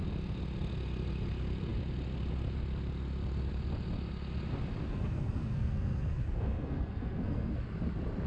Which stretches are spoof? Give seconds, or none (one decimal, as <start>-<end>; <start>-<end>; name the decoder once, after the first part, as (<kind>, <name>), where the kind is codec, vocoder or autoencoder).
4.9-7.5 (codec, SNAC)